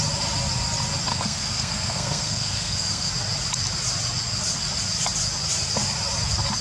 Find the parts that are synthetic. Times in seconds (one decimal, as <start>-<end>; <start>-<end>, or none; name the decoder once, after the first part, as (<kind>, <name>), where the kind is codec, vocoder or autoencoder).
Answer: 1.1-3.1 (codec, SNAC)